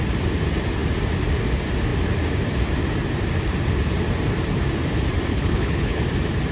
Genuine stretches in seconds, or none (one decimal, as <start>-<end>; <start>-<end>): 0.0-5.3; 6.0-6.5